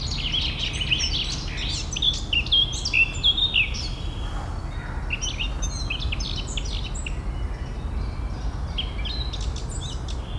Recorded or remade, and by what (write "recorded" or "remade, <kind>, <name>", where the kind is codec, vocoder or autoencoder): recorded